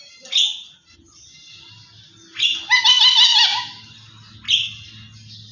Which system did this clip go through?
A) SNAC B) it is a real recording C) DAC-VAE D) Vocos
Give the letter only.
B